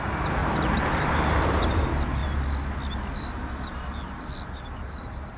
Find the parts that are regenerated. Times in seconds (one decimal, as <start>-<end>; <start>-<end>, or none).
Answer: 0.0-2.2; 4.5-5.4